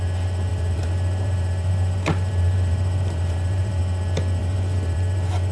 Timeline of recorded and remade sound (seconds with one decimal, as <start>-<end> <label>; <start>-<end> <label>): 0.0-0.5 recorded; 0.5-3.8 remade; 3.8-4.4 recorded; 4.4-5.5 remade